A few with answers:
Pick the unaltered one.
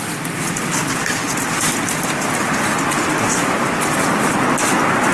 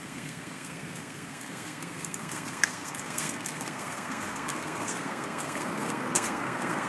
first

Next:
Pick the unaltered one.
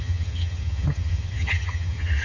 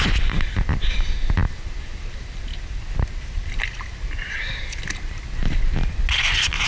second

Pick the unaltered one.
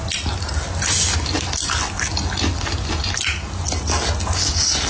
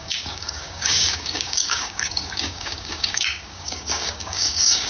first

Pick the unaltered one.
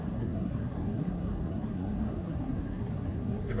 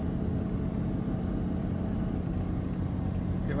second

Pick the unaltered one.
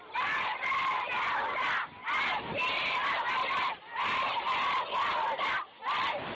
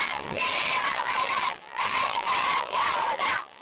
first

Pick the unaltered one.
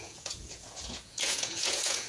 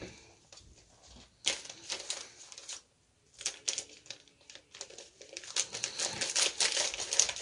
second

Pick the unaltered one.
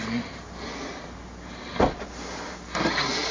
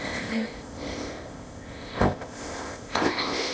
first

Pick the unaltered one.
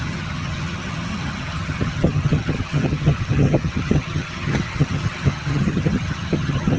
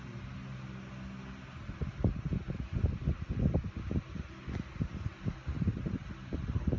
second